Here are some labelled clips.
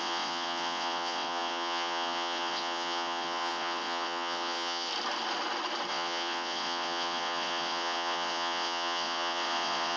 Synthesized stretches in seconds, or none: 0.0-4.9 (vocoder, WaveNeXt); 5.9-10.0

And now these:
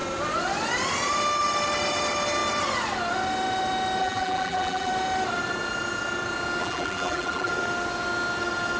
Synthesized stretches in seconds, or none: 4.0-4.9 (vocoder, BigVGAN v2); 6.6-7.5

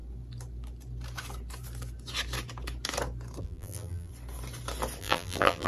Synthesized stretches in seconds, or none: 3.4-4.1 (vocoder, BigVGAN v2); 5.0-5.7

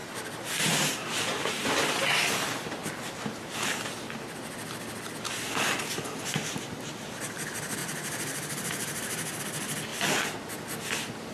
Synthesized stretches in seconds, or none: 0.0-2.0 (vocoder, BigVGAN v2); 7.8-9.4